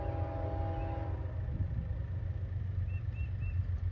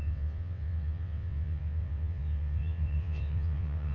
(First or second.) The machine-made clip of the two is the second